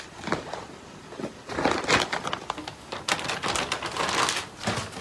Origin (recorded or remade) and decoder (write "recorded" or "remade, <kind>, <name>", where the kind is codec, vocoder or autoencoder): recorded